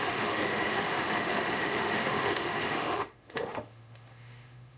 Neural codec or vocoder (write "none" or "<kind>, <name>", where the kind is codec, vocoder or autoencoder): autoencoder, DAC-VAE